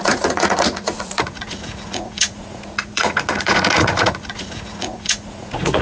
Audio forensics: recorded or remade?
remade